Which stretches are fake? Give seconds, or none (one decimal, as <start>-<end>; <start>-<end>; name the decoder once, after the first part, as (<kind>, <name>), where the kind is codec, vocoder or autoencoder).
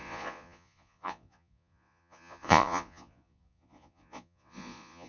0.0-5.1 (vocoder, Vocos)